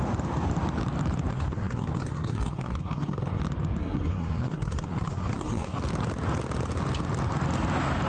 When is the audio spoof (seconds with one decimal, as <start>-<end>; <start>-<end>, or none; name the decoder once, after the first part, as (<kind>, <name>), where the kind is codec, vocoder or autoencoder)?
1.3-3.4 (codec, SNAC); 3.8-5.8